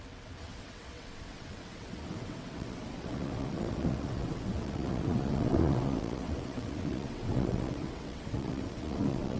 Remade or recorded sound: remade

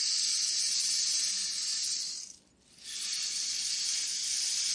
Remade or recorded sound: recorded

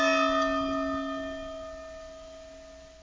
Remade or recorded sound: recorded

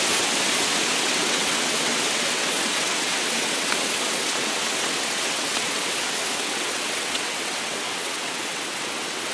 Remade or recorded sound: remade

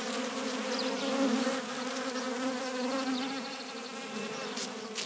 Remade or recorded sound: recorded